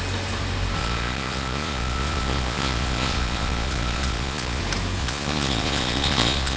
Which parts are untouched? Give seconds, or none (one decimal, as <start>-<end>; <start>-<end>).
0.0-0.8; 4.6-5.0